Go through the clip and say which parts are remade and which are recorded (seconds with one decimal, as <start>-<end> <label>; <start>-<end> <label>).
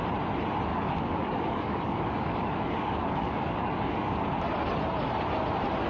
0.0-0.7 recorded; 0.7-4.2 remade; 4.2-5.9 recorded